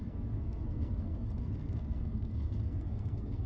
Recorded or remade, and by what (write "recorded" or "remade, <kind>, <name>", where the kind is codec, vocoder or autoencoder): remade, codec, SNAC